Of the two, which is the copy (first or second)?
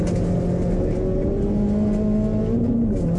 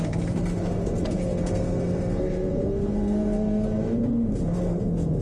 second